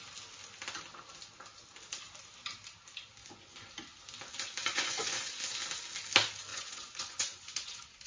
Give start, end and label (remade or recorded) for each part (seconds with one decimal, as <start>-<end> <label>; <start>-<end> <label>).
0.0-3.2 recorded; 3.2-3.7 remade; 3.7-4.6 recorded; 4.6-5.3 remade; 5.3-6.5 recorded; 6.5-8.1 remade

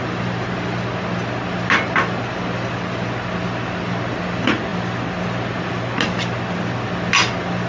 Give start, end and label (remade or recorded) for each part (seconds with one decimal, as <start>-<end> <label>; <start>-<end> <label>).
0.0-7.7 recorded